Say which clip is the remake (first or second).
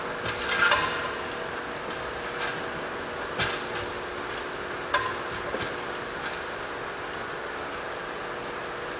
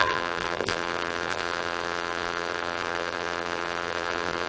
second